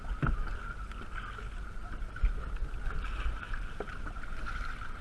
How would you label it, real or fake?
real